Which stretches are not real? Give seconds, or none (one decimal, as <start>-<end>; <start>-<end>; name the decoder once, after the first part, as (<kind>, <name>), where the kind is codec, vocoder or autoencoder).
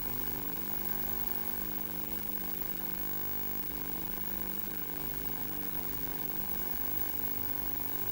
0.0-3.0 (vocoder, BigVGAN v2); 3.6-8.1